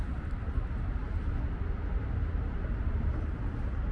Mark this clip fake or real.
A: real